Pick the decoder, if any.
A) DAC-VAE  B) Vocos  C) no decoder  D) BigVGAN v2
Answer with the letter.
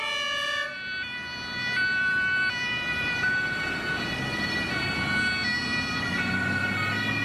C